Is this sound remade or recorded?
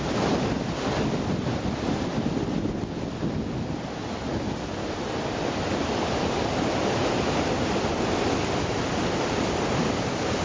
recorded